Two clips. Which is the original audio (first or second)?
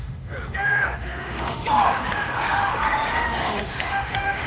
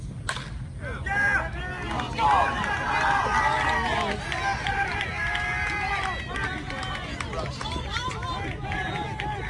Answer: second